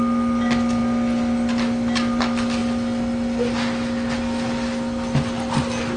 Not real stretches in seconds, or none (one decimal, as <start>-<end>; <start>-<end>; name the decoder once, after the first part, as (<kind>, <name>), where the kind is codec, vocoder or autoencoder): none